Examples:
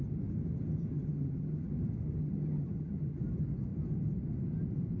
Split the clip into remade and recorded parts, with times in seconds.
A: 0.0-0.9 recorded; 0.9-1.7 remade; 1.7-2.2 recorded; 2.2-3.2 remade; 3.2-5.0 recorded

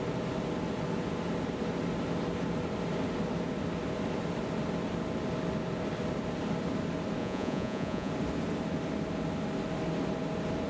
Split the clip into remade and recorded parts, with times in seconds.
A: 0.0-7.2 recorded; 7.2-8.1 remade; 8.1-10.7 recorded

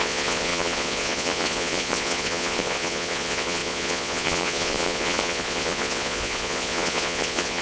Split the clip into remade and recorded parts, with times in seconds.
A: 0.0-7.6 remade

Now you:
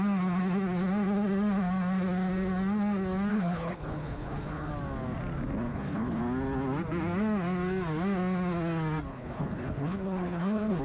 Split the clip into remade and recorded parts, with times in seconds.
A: 0.0-3.3 recorded; 3.3-4.7 remade; 4.7-5.7 recorded; 5.7-6.2 remade; 6.2-9.1 recorded; 9.1-10.8 remade

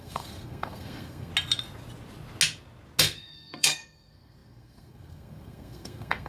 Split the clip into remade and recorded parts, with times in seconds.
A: 0.0-1.3 remade; 1.3-3.0 recorded; 3.0-6.3 remade

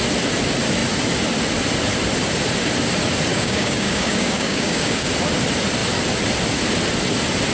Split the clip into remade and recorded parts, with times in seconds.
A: 0.0-3.3 recorded; 3.3-5.1 remade; 5.1-7.5 recorded

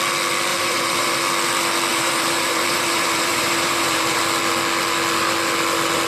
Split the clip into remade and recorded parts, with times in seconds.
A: 0.0-0.5 recorded; 0.5-1.2 remade; 1.2-1.9 recorded; 1.9-4.2 remade; 4.2-6.1 recorded